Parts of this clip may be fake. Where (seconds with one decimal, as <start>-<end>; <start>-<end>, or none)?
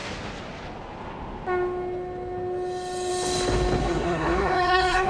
3.8-5.1